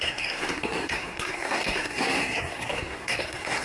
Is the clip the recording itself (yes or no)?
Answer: no